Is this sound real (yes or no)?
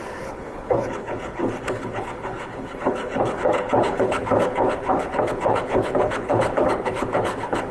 no